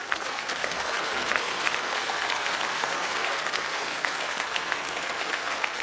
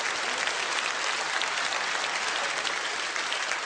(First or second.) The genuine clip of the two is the second